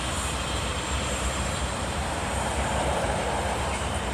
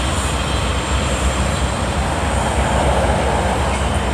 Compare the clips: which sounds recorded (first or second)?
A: second